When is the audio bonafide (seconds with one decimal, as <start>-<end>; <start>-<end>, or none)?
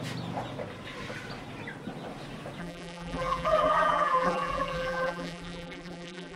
0.0-2.6